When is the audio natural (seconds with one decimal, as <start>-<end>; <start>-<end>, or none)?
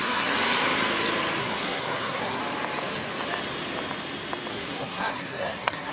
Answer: 0.4-1.4; 2.4-4.5